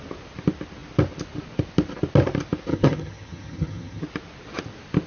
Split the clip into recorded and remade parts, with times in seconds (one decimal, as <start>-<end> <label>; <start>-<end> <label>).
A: 0.0-2.7 recorded; 2.7-4.0 remade; 4.0-5.1 recorded